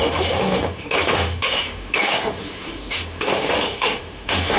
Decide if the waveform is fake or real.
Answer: fake